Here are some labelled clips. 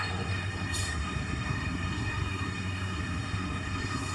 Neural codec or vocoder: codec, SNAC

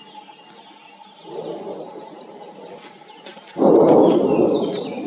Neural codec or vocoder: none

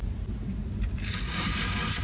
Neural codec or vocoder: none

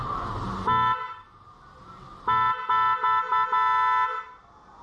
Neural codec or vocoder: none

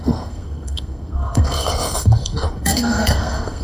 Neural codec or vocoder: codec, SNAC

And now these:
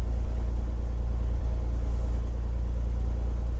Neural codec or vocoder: none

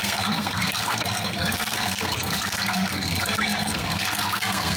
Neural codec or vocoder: codec, SNAC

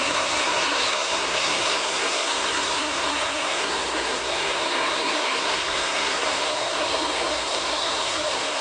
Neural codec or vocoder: codec, SNAC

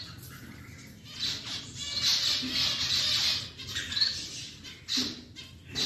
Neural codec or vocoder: none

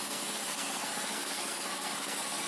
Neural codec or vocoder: codec, SNAC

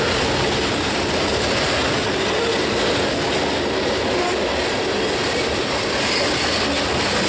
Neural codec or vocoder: none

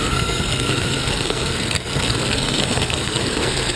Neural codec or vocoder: codec, SNAC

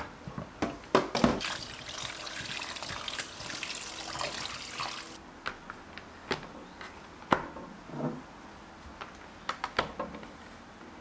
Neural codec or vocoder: none